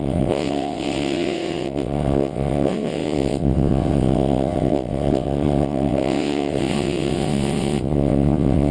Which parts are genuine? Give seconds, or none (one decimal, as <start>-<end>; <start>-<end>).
none